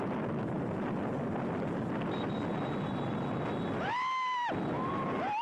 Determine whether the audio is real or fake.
real